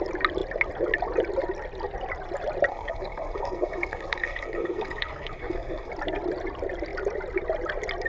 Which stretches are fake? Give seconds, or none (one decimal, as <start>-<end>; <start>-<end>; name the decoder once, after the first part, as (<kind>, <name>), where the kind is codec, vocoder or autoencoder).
2.7-5.9 (codec, SNAC)